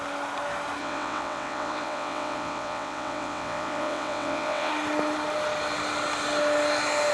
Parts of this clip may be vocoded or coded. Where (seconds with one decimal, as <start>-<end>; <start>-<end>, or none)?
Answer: 0.8-4.7